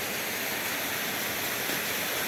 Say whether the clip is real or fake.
real